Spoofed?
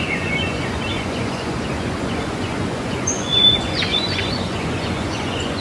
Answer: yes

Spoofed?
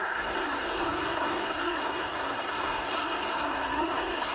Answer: yes